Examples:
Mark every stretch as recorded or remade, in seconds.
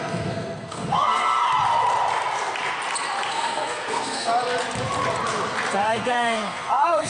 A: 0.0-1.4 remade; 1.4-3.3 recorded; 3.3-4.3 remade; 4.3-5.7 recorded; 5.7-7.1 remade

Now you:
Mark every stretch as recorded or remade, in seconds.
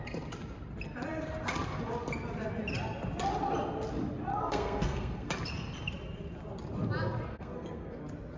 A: 0.0-4.3 recorded; 4.3-5.3 remade; 5.3-7.3 recorded; 7.3-8.0 remade; 8.0-8.4 recorded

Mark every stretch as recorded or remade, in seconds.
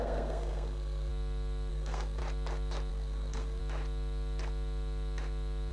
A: 0.0-1.1 remade; 1.1-1.7 recorded; 1.7-2.2 remade; 2.2-2.9 recorded; 2.9-3.6 remade; 3.6-5.7 recorded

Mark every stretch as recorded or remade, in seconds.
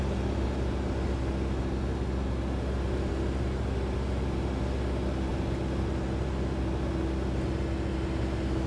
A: 0.0-8.7 recorded